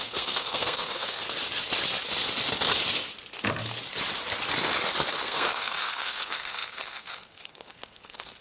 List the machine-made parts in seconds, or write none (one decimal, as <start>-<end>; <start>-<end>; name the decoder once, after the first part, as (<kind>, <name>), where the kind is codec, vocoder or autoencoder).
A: 0.0-1.2 (codec, SNAC); 5.1-8.4